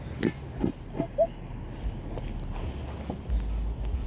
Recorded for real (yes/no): yes